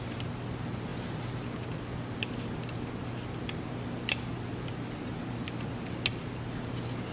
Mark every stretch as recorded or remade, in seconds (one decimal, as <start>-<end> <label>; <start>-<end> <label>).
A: 0.0-7.1 recorded